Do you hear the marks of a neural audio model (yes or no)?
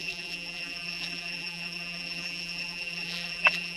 yes